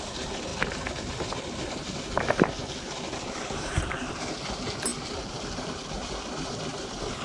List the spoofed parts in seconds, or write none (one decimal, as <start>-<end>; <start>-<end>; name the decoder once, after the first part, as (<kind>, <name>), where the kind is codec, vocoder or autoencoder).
4.9-7.2 (vocoder, BigVGAN v2)